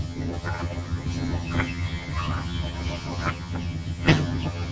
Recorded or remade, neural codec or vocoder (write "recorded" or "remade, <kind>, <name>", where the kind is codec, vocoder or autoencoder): remade, vocoder, HiFi-GAN